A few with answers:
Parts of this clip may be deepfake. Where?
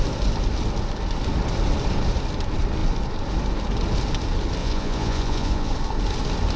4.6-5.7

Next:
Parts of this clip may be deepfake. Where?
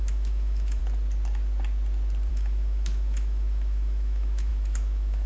0.0-0.8; 2.3-5.3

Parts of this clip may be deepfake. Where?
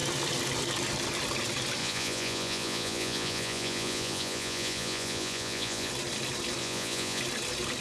1.8-5.9; 6.6-7.2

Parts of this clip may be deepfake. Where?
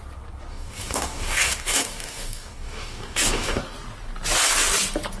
0.5-3.6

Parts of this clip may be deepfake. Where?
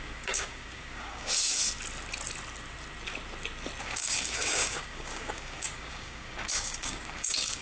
0.0-1.6; 3.8-7.6